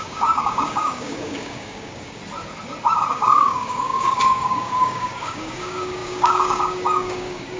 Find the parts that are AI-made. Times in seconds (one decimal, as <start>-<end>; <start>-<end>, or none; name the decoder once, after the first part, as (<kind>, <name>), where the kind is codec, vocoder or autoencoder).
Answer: 0.0-2.2 (codec, DAC); 3.1-7.6